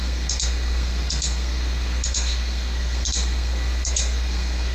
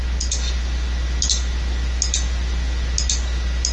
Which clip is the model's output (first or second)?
first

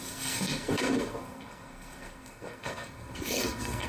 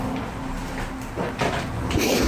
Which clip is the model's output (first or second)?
first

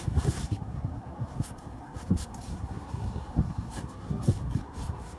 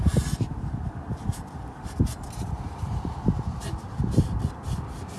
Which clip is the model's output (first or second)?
first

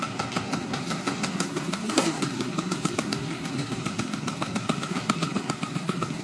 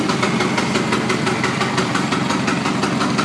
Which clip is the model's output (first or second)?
first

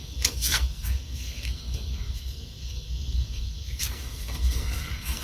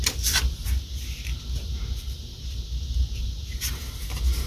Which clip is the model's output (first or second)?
first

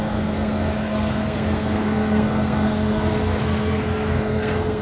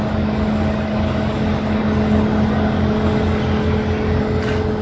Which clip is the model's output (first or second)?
first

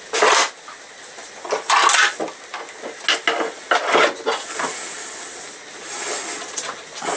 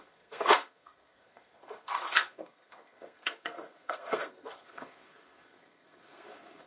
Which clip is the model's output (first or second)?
second